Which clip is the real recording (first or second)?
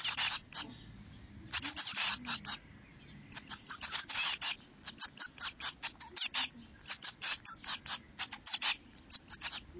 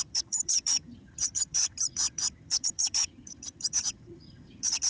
first